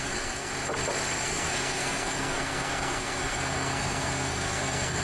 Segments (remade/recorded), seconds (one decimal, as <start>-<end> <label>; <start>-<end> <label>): 0.0-0.5 remade; 0.5-1.2 recorded; 1.2-5.0 remade